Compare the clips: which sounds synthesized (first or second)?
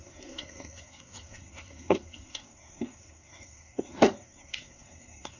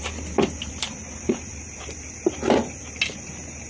first